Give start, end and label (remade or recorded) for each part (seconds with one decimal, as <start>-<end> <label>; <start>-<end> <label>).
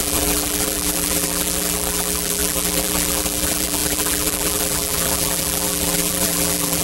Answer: 0.0-6.8 remade